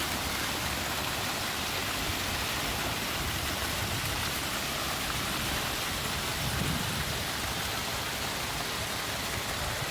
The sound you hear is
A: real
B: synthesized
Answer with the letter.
B